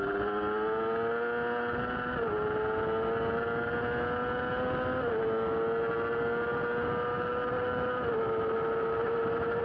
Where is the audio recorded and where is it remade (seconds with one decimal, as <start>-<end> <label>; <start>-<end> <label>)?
0.0-9.0 recorded; 9.0-9.6 remade